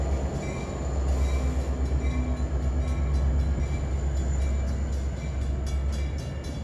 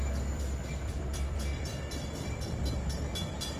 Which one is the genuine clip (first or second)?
first